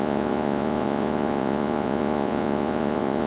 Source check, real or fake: fake